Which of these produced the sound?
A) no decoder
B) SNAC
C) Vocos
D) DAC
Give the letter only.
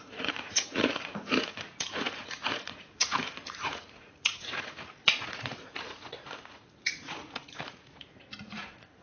C